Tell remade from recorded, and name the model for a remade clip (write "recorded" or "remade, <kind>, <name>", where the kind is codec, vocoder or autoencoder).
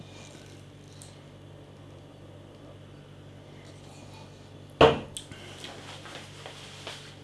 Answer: recorded